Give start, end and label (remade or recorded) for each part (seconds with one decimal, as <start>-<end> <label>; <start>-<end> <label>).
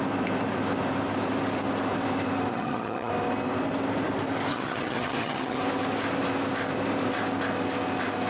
0.0-2.5 recorded; 2.5-3.1 remade; 3.1-4.5 recorded; 4.5-5.6 remade; 5.6-8.3 recorded